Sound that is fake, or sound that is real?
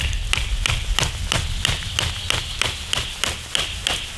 real